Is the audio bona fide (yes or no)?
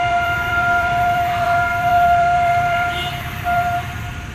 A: no